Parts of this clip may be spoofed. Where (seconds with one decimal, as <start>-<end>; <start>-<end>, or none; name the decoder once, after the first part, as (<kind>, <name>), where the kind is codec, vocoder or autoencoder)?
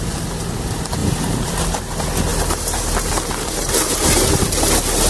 1.0-1.6 (vocoder, BigVGAN v2)